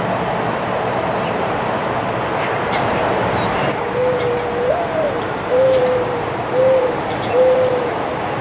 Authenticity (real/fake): fake